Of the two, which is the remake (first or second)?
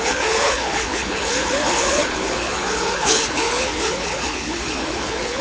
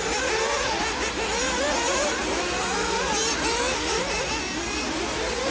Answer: first